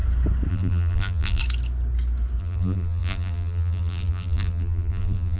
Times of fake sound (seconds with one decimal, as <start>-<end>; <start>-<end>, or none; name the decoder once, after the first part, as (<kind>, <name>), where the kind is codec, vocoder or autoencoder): 0.5-1.4 (vocoder, BigVGAN v2); 2.4-5.4

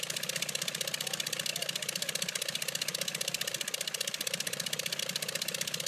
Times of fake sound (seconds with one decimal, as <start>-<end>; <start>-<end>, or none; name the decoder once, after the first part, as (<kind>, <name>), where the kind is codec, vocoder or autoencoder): none

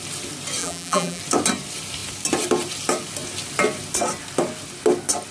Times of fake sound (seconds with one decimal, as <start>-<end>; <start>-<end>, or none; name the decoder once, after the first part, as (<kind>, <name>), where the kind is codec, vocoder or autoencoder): 0.6-1.2 (vocoder, BigVGAN v2)

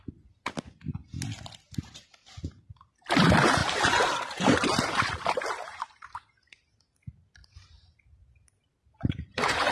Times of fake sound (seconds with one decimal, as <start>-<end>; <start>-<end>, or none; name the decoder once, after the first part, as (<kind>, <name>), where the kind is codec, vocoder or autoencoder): 3.6-5.8 (vocoder, BigVGAN v2); 7.4-9.7

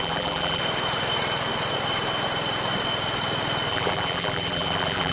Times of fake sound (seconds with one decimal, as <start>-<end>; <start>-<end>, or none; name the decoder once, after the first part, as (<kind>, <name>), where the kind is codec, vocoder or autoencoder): 0.0-0.6 (vocoder, BigVGAN v2); 3.7-5.1

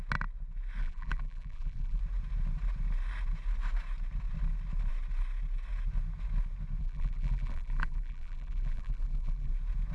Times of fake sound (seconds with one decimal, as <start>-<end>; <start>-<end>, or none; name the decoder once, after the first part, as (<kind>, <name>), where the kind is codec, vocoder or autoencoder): 0.8-2.0 (vocoder, BigVGAN v2); 6.8-9.5

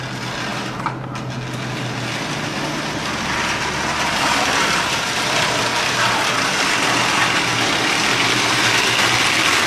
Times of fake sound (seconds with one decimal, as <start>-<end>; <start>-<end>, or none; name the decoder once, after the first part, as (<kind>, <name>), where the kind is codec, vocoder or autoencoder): 0.0-0.5 (vocoder, BigVGAN v2); 3.9-9.7

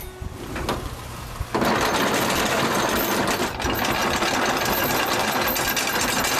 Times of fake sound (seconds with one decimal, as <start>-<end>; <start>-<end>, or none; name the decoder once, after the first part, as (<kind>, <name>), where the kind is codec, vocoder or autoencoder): none